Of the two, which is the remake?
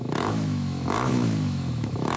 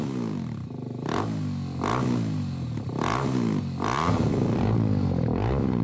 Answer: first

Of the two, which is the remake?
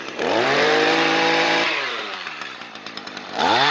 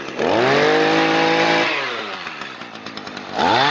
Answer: first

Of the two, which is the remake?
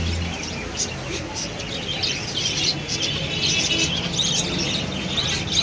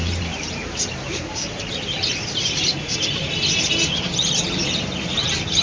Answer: second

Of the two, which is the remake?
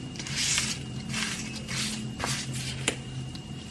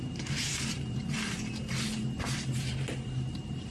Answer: second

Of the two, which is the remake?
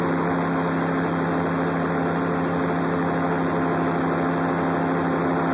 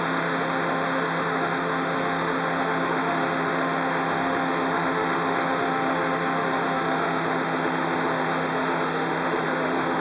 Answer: second